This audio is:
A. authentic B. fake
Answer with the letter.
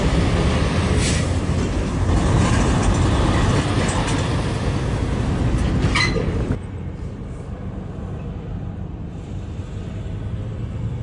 A